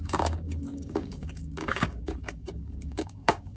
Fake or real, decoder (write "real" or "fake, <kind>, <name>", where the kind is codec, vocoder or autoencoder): fake, codec, DAC